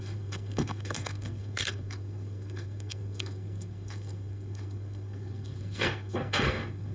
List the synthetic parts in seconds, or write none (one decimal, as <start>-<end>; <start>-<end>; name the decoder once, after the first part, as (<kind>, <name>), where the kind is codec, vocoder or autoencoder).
0.0-6.9 (codec, SNAC)